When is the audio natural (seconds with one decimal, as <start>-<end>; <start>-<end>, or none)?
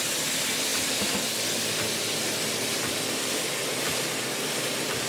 0.0-5.1